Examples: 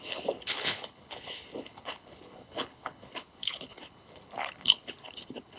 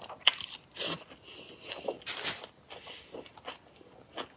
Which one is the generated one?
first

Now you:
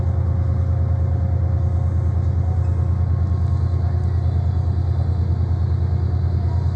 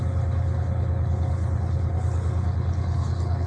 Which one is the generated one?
second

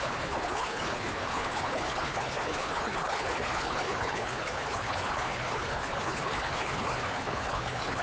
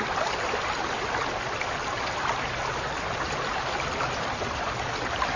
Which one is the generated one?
first